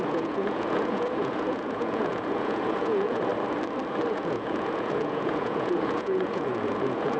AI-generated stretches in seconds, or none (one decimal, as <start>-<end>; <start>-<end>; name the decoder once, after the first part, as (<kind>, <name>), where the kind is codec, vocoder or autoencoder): 0.0-3.3 (vocoder, Vocos); 4.1-7.2